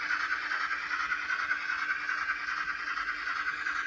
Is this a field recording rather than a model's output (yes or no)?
yes